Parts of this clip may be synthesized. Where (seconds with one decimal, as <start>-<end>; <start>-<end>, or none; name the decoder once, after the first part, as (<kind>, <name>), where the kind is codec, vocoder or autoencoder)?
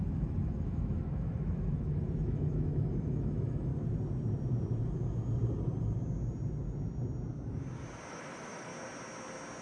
0.0-3.7 (autoencoder, DAC-VAE); 8.1-8.7